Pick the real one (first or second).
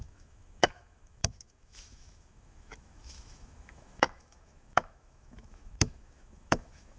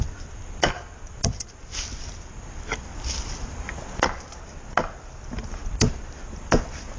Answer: second